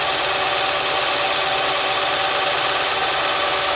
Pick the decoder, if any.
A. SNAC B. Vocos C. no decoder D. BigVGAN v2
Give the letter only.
C